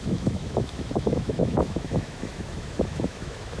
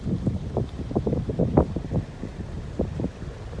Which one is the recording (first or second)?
second